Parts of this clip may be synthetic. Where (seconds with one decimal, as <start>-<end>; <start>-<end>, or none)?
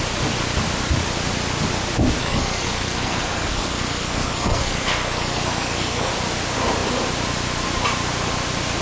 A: 2.2-6.1